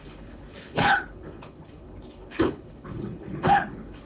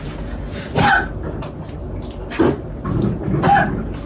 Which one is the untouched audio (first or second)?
second